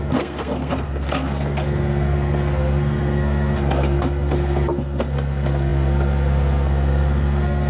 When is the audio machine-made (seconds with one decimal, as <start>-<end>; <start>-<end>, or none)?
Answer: 0.0-7.7